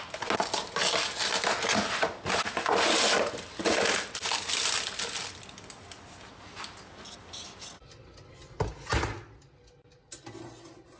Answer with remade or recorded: recorded